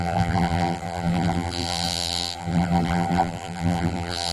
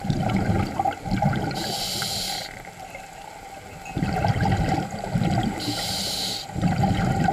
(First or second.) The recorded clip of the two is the second